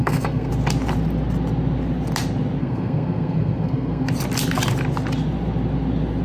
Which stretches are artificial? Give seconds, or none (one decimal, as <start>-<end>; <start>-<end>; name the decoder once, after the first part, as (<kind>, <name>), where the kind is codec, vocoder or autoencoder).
0.0-0.5 (codec, SNAC); 2.6-4.1